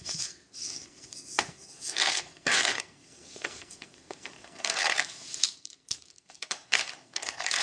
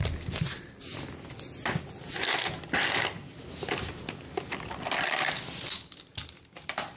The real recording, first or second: second